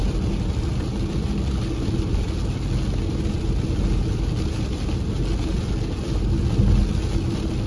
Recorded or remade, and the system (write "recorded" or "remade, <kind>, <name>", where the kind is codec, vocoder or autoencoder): recorded